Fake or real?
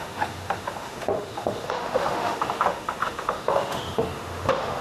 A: fake